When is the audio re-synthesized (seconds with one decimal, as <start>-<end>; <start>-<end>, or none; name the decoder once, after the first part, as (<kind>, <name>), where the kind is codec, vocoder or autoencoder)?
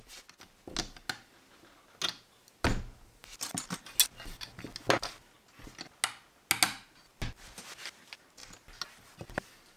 none